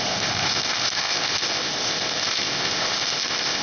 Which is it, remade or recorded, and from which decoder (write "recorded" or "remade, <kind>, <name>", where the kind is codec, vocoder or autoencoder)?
remade, codec, ZipCodec